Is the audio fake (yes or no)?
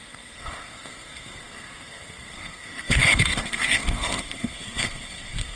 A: yes